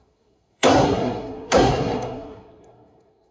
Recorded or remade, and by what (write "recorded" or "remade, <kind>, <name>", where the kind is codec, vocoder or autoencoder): remade, codec, SNAC